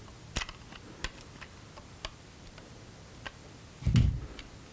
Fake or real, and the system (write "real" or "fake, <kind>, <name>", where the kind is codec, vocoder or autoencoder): real